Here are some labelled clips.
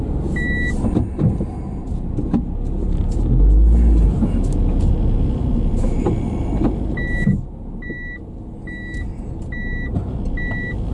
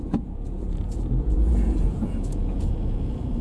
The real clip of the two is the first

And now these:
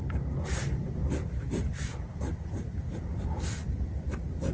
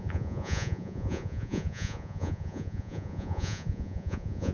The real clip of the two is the first